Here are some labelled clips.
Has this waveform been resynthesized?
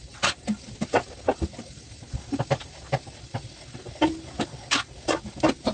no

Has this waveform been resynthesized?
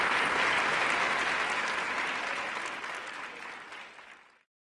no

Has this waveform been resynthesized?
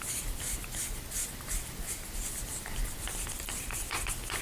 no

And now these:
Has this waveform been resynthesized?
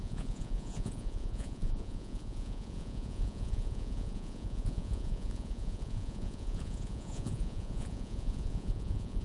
yes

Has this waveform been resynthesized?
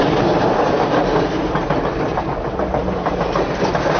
no